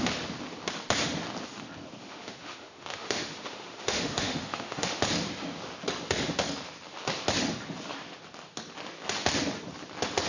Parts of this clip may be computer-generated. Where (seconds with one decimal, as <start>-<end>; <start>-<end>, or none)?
2.0-5.0